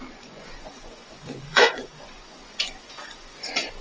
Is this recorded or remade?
remade